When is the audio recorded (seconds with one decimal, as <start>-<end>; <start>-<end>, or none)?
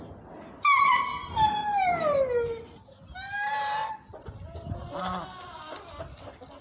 0.0-1.1; 2.8-6.6